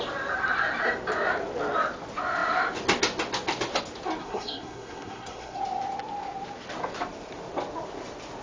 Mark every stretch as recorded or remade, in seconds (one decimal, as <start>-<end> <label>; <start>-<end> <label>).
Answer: 0.0-4.2 recorded; 4.2-5.6 remade; 5.6-8.4 recorded

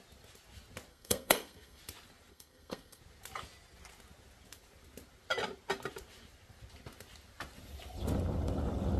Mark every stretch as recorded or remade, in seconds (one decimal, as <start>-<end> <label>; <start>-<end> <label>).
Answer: 0.0-0.9 recorded; 0.9-1.8 remade; 1.8-2.3 recorded; 2.3-3.0 remade; 3.0-9.0 recorded

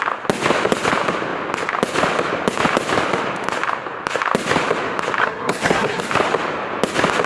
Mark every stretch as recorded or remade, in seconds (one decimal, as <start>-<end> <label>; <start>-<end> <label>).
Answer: 0.0-5.2 recorded; 5.2-6.0 remade; 6.0-7.3 recorded

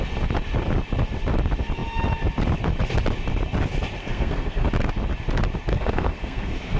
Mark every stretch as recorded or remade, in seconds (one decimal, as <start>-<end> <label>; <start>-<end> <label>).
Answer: 0.0-4.0 recorded; 4.0-4.7 remade; 4.7-5.7 recorded; 5.7-6.8 remade

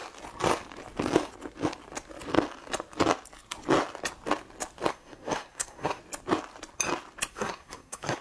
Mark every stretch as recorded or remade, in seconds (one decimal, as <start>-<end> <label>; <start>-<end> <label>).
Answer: 0.0-4.9 recorded; 4.9-6.0 remade; 6.0-7.3 recorded; 7.3-8.2 remade